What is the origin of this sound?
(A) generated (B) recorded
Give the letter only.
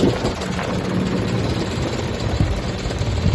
B